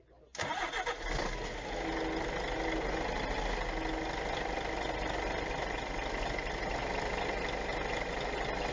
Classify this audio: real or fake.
real